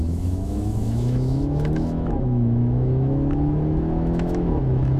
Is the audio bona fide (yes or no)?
no